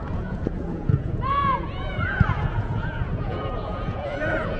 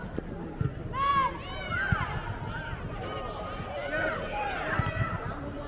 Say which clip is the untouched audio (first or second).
second